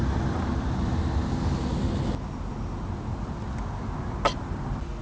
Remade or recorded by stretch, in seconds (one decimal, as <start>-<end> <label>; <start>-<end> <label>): 0.0-5.0 recorded